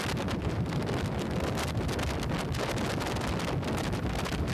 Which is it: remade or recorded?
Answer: recorded